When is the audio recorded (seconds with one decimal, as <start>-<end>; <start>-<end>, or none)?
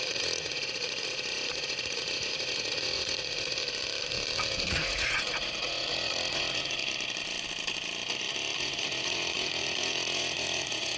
3.6-4.5; 6.8-8.6